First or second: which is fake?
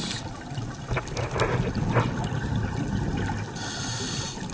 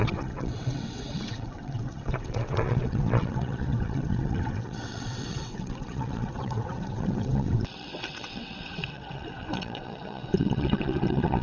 second